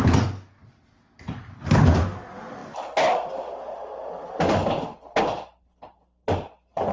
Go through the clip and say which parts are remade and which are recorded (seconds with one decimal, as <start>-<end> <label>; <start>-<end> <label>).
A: 0.0-6.9 recorded